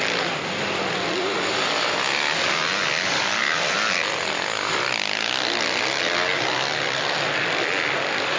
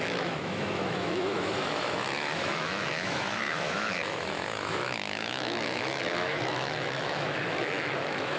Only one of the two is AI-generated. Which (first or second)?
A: second